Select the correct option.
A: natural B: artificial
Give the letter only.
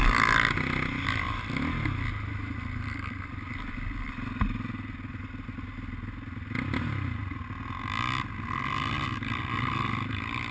A